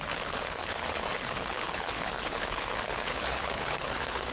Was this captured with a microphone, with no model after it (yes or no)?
no